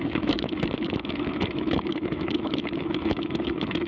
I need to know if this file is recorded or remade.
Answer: remade